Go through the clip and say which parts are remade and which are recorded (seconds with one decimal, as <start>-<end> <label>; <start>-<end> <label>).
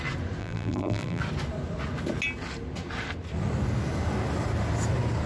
0.0-0.4 recorded; 0.4-1.2 remade; 1.2-5.3 recorded